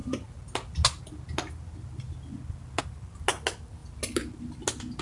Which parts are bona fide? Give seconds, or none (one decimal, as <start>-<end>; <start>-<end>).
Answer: 0.0-5.0